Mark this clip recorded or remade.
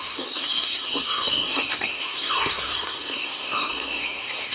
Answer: remade